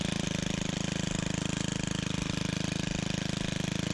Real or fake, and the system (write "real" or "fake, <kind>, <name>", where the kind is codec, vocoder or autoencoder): real